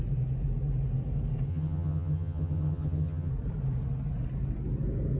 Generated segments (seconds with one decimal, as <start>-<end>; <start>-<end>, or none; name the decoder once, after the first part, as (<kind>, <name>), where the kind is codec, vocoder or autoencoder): 1.5-3.3 (vocoder, HiFi-GAN)